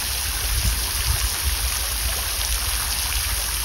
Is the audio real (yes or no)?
yes